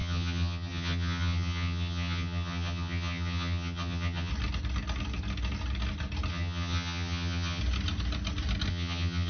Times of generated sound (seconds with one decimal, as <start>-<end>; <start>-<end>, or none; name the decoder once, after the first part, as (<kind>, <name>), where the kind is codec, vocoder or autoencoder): 0.0-4.3 (vocoder, HiFi-GAN); 6.3-7.6; 8.7-9.3